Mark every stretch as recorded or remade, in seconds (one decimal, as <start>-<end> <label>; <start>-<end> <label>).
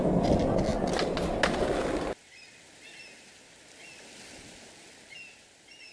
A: 0.0-5.9 recorded